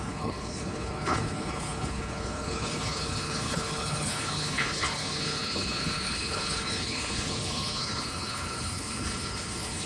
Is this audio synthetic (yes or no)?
yes